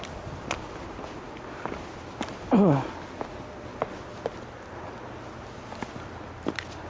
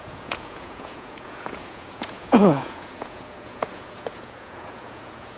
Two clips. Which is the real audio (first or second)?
first